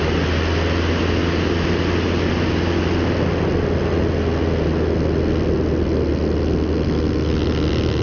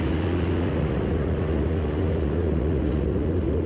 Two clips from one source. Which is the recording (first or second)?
first